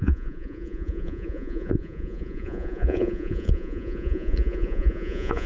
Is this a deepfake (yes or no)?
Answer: yes